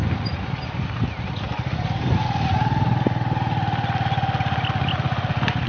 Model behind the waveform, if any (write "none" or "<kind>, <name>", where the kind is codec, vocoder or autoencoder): none